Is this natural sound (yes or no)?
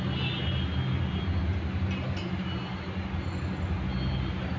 yes